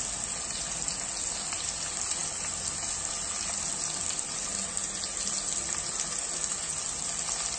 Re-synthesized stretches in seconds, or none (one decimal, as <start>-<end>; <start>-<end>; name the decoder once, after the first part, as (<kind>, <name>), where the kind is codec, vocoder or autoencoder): none